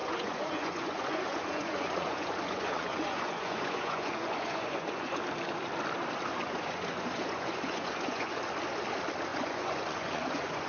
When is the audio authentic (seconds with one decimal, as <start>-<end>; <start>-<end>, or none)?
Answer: 5.2-6.3; 8.4-9.3